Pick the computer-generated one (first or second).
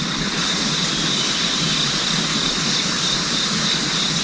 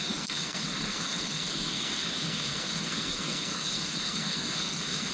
second